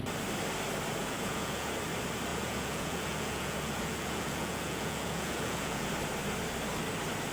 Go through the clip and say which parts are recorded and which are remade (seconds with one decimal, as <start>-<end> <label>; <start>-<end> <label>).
0.0-1.0 recorded; 1.0-1.7 remade; 1.7-2.3 recorded; 2.3-5.9 remade; 5.9-7.3 recorded